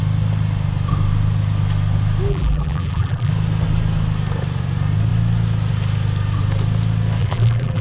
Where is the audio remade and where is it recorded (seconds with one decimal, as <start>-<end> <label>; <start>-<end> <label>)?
0.0-2.3 recorded; 2.3-3.3 remade; 3.3-7.2 recorded; 7.2-7.8 remade